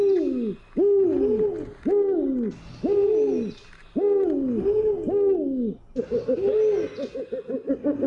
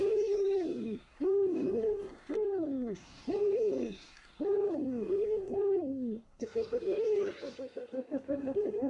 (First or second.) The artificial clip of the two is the second